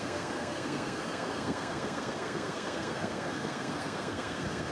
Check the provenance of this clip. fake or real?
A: fake